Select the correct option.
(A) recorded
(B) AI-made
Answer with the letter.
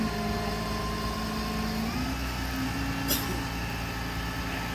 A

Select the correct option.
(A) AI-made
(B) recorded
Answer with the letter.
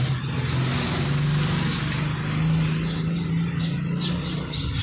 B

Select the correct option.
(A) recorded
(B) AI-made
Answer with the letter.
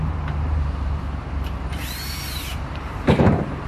B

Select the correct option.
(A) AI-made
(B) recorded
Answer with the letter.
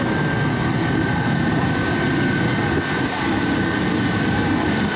B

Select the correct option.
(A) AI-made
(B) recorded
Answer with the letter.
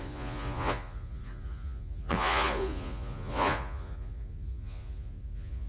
A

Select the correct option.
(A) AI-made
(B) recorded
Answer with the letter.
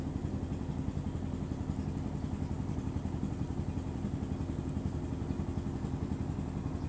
B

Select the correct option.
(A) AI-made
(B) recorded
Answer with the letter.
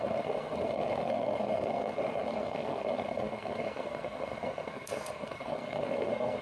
A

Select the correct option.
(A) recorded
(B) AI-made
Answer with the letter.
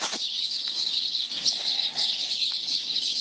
B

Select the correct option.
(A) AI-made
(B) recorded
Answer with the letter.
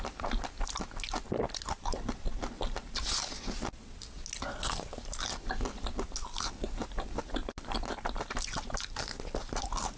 B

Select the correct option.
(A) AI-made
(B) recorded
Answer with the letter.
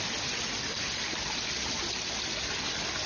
B